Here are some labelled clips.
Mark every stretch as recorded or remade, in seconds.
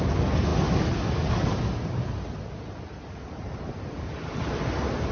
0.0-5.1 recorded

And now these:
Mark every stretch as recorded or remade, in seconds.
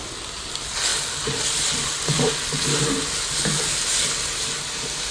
0.0-5.1 recorded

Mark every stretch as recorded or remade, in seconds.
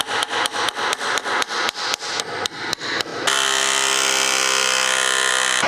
0.0-5.7 recorded